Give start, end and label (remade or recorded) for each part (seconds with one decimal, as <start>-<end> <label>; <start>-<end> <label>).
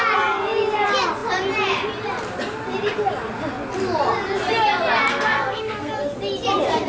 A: 0.0-5.1 recorded; 5.1-5.9 remade; 5.9-6.9 recorded